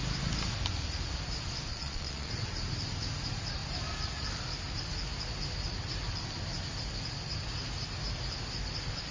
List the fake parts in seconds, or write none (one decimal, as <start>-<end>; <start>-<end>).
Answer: 1.7-2.3

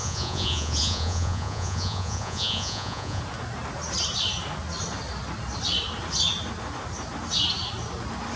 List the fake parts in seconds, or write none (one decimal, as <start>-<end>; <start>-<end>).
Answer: 0.0-3.2

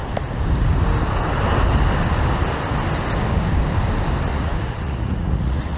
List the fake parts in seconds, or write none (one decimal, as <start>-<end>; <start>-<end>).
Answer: 4.3-5.8